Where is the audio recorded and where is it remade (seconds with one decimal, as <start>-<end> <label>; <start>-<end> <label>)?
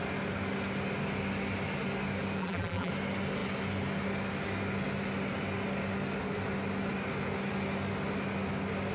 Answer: 0.0-2.4 recorded; 2.4-2.9 remade; 2.9-8.9 recorded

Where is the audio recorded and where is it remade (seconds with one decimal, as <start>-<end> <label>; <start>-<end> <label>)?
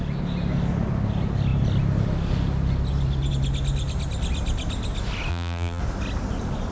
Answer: 0.0-5.3 recorded; 5.3-5.8 remade; 5.8-6.7 recorded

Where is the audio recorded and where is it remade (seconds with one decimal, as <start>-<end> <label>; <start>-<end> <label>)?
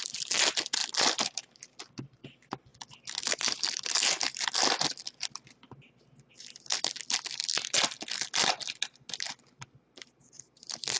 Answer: 0.0-11.0 recorded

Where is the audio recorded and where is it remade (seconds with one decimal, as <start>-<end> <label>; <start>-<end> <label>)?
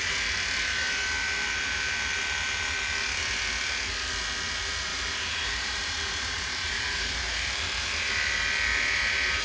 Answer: 0.0-4.9 recorded; 4.9-8.1 remade; 8.1-9.4 recorded